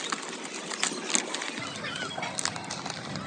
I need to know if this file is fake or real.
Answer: real